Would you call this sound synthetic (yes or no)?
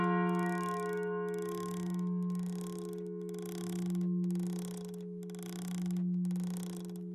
no